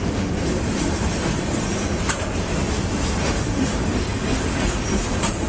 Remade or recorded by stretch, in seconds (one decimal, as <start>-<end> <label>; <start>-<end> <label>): 0.0-0.4 remade; 0.4-3.2 recorded; 3.2-3.8 remade; 3.8-5.5 recorded